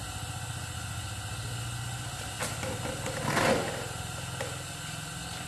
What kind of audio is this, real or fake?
real